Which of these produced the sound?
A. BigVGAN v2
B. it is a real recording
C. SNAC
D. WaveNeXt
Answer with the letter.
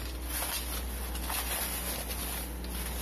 B